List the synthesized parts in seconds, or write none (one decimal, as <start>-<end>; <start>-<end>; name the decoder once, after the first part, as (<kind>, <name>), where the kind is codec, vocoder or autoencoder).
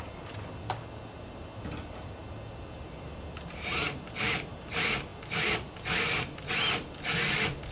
none